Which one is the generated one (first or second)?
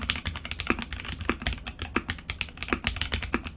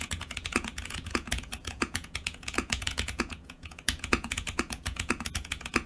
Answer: second